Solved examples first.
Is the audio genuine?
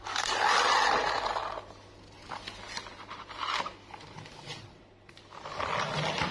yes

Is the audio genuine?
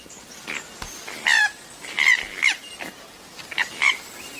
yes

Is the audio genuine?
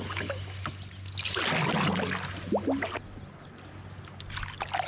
yes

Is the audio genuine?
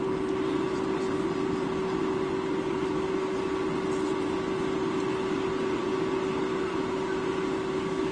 yes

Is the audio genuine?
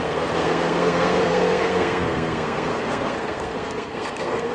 no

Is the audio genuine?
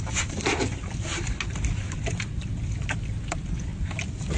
yes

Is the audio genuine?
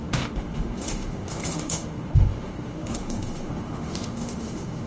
no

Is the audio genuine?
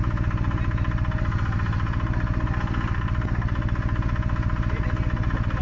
yes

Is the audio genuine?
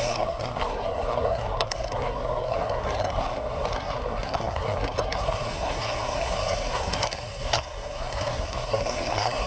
no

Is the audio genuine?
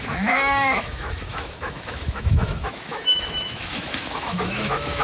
no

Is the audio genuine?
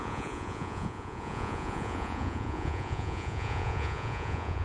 no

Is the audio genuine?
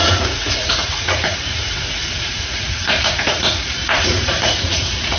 no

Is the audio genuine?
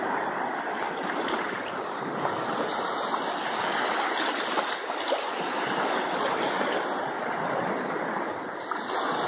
yes